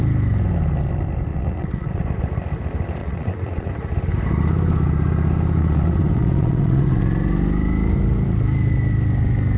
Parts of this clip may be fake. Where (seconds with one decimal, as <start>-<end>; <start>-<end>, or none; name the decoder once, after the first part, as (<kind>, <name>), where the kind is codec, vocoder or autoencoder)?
1.3-2.0 (vocoder, WaveNeXt); 3.0-3.7; 5.6-7.0